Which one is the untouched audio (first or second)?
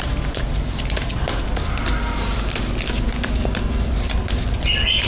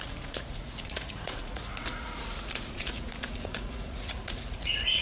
first